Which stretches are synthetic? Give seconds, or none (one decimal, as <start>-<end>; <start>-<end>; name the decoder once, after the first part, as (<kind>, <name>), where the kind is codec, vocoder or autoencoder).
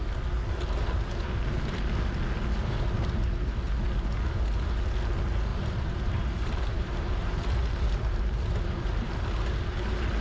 5.5-9.1 (vocoder, BigVGAN v2)